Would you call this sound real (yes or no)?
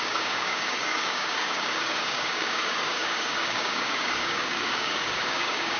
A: no